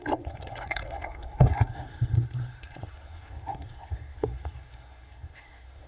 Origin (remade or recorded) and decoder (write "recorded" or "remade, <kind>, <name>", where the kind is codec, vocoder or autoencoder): remade, codec, SNAC